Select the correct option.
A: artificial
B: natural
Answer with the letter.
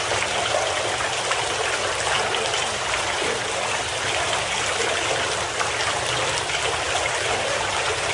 B